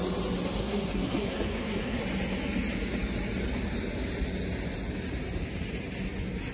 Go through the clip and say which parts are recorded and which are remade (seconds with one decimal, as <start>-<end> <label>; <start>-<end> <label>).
0.0-0.6 recorded; 0.6-2.0 remade; 2.0-6.5 recorded